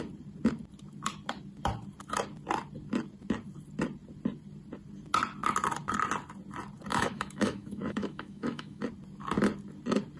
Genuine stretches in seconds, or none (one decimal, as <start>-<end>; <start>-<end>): 0.0-6.9; 8.8-10.2